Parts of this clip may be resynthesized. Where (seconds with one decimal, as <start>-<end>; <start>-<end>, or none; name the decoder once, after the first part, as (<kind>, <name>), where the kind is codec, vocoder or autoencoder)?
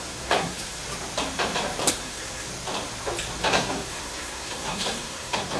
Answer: 0.0-0.8 (codec, SNAC); 1.9-2.5; 3.4-5.6